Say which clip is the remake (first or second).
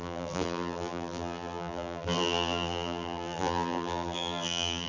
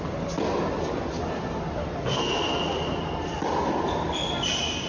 first